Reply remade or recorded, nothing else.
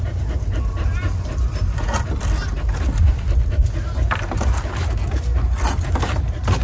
recorded